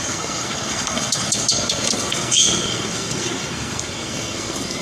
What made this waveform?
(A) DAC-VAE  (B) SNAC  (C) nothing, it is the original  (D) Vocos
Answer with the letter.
B